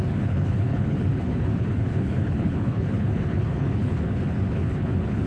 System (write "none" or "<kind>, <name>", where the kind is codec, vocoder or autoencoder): codec, HILCodec